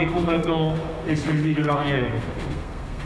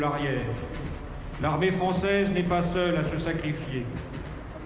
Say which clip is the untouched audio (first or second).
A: second